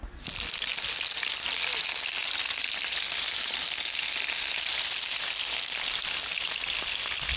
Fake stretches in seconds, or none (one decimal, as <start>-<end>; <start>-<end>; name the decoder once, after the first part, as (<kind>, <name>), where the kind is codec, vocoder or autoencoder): none